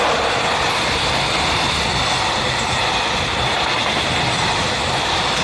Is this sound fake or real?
real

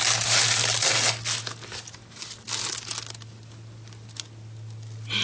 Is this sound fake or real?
real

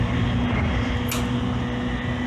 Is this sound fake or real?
real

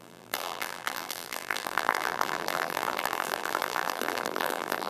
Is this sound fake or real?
fake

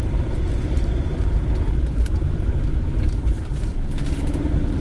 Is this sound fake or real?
fake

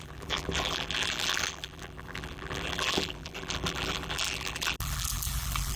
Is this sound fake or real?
fake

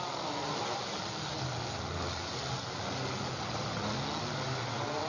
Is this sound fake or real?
real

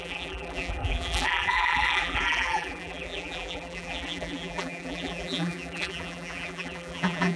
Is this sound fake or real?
fake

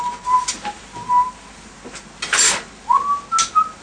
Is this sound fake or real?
real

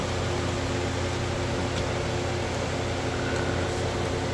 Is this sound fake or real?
real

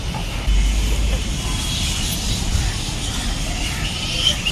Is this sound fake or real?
real